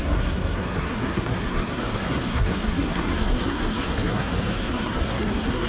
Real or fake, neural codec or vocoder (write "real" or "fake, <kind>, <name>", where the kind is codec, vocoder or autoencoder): fake, codec, SNAC